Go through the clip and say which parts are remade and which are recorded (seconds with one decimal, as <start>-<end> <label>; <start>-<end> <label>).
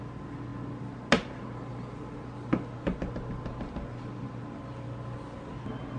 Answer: 0.0-6.0 recorded